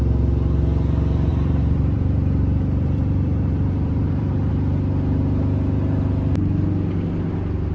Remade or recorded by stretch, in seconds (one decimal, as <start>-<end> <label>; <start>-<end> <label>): 0.0-1.3 recorded; 1.3-4.5 remade; 4.5-7.7 recorded